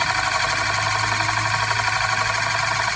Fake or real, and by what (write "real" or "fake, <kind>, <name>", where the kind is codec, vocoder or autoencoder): real